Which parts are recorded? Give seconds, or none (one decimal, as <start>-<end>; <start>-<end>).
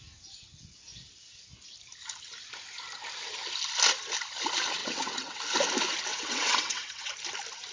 0.0-4.8; 5.4-6.1; 7.1-7.7